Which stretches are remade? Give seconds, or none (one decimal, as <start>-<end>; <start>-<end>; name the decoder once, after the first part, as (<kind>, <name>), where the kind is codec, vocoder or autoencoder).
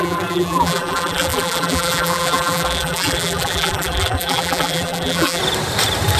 0.0-5.4 (vocoder, BigVGAN v2)